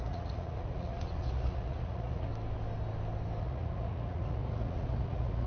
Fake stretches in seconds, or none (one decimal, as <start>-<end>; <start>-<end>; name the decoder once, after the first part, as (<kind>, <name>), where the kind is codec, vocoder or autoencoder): 0.0-2.3 (vocoder, Vocos); 3.4-5.5